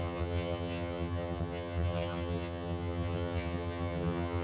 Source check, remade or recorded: remade